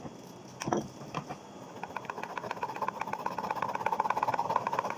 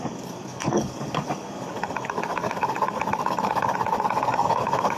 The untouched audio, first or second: first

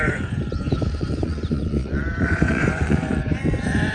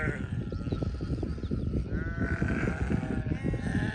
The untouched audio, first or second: second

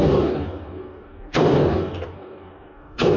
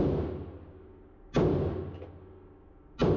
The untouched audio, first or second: second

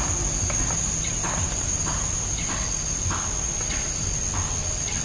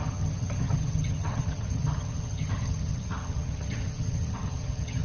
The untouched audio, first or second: first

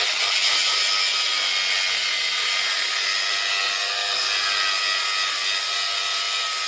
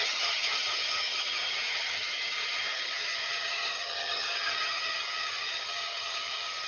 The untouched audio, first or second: first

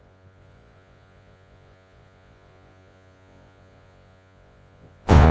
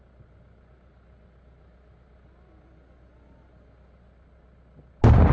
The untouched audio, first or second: second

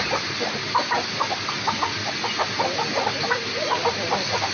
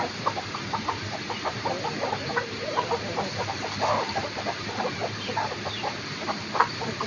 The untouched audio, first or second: first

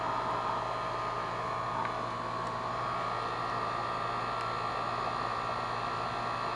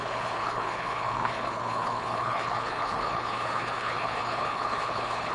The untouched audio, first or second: first